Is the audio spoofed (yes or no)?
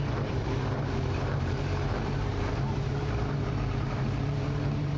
yes